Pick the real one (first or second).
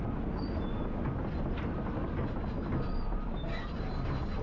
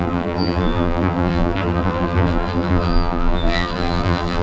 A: first